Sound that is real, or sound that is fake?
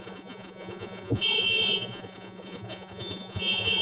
fake